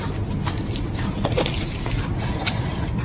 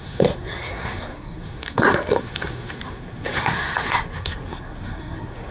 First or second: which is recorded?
first